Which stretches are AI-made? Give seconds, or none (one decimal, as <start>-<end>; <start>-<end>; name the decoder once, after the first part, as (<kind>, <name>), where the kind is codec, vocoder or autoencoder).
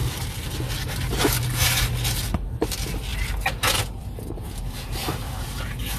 none